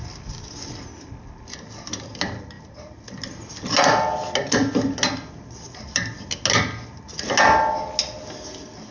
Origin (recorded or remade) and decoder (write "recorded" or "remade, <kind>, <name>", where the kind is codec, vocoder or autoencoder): recorded